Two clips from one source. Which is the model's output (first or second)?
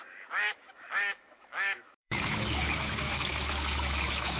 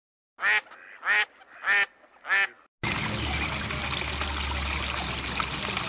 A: first